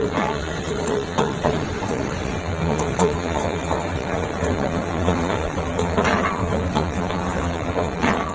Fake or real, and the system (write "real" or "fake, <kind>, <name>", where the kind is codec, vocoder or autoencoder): fake, vocoder, WaveNeXt